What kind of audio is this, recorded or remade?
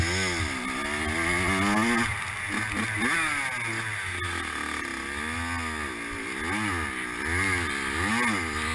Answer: recorded